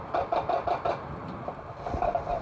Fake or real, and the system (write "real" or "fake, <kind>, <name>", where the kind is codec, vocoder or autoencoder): real